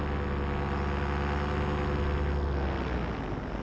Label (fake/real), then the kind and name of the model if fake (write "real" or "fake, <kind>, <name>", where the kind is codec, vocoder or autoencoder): real